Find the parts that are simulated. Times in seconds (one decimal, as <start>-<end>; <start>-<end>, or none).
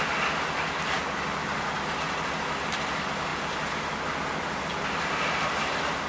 none